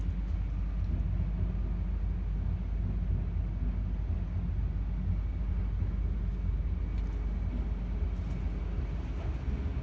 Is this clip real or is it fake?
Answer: real